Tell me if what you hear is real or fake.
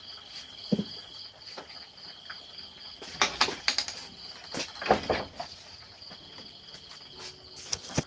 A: real